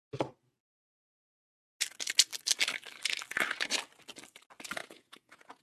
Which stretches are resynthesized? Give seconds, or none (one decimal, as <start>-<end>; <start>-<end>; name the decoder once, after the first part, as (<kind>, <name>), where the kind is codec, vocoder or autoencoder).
4.8-5.6 (vocoder, Vocos)